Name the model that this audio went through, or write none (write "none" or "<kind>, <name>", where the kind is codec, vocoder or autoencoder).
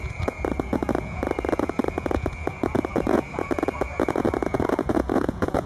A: vocoder, Vocos